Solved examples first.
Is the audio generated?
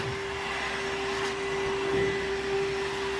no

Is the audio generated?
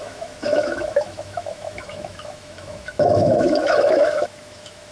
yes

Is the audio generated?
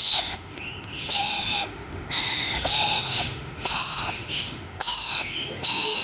yes